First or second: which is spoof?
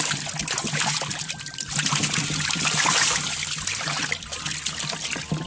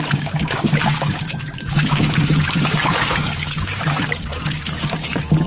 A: second